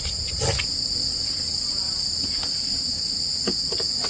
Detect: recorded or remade recorded